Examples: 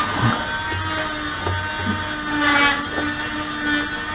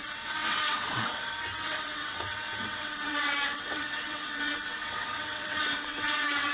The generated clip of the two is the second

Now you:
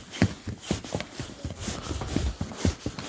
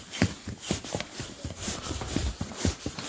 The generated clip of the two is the second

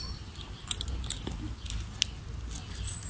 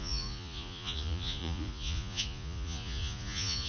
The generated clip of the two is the second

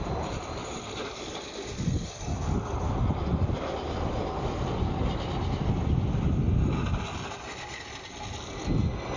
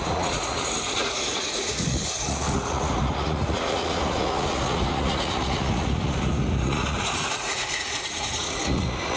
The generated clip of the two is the second